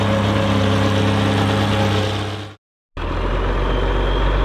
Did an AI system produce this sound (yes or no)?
no